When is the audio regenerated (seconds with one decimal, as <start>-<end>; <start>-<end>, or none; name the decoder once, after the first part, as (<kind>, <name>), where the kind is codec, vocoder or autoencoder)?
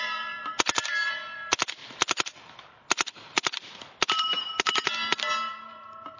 0.0-1.8 (vocoder, BigVGAN v2); 5.5-6.2